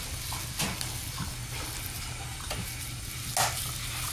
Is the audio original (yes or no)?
yes